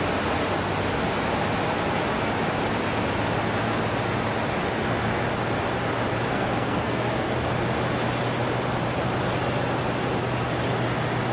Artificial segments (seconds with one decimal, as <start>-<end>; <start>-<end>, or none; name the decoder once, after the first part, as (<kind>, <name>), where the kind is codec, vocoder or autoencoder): 6.3-7.3 (codec, SNAC)

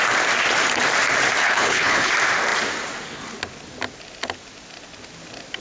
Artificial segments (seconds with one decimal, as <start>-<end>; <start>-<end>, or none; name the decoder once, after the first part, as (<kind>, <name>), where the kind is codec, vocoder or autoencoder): 1.4-2.1 (codec, HILCodec)

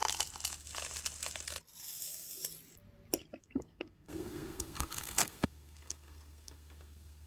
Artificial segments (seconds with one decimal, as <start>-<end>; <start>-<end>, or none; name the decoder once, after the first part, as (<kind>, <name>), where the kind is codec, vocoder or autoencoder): 1.8-2.4 (codec, SNAC); 3.4-7.3

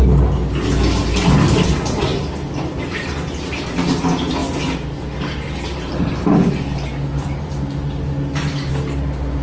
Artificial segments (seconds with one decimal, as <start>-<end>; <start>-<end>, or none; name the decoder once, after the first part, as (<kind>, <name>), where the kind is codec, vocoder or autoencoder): none

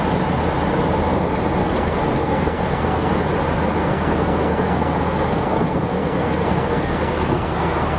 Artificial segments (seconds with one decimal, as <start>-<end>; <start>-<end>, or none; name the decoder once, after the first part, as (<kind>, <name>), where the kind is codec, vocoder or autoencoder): 1.6-3.1 (codec, SNAC); 3.8-8.0

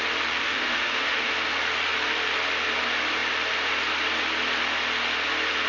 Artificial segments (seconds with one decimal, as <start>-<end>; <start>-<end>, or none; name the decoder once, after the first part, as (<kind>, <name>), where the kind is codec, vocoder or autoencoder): 0.4-1.3 (autoencoder, DAC-VAE)

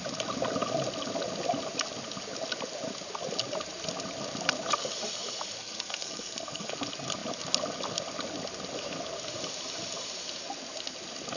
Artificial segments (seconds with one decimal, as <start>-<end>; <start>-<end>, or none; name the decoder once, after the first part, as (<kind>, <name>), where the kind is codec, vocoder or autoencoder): 5.6-6.7 (codec, SNAC)

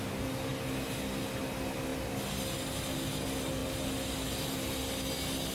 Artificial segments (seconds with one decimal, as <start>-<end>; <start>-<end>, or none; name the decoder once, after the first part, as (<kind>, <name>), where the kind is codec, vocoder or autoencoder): none